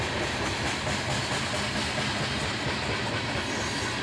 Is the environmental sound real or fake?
real